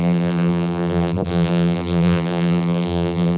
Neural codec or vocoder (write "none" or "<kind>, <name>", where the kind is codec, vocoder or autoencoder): vocoder, BigVGAN v2